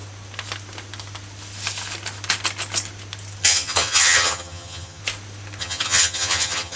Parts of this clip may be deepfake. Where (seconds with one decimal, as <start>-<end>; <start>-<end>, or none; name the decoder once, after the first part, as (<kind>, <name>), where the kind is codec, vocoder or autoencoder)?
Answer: 3.4-5.0 (vocoder, HiFi-GAN); 5.6-6.8

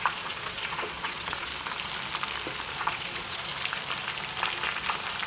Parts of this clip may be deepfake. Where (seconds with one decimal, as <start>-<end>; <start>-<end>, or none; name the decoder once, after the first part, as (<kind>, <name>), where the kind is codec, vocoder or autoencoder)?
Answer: 0.0-1.5 (vocoder, Vocos); 2.8-3.5

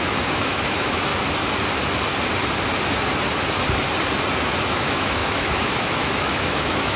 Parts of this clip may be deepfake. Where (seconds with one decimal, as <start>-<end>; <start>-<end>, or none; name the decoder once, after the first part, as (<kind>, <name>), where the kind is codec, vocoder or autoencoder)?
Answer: 0.0-1.1 (autoencoder, DAC-VAE); 4.7-7.0

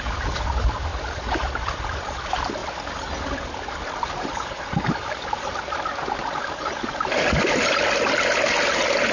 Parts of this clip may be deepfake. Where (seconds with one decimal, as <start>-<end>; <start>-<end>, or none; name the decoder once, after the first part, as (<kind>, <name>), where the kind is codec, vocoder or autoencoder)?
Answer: none

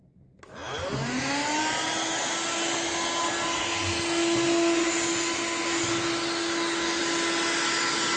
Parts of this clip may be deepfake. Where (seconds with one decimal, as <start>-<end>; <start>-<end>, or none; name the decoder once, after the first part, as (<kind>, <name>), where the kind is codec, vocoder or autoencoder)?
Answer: none

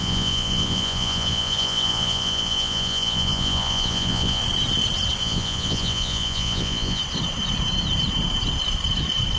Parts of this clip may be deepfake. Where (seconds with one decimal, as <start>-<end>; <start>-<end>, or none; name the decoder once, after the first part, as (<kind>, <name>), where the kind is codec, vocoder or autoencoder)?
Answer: 0.0-4.4 (vocoder, Vocos); 5.2-7.0

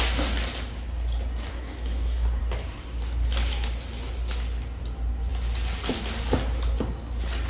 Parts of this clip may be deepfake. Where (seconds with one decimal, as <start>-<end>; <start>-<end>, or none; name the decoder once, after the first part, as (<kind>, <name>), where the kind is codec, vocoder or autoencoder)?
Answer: 1.5-2.4 (codec, SNAC)

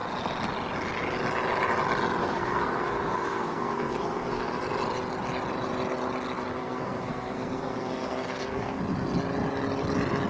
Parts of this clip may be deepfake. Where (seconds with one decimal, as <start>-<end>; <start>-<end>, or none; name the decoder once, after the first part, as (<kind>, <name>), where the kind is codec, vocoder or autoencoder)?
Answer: 2.2-4.6 (codec, SNAC); 6.5-8.8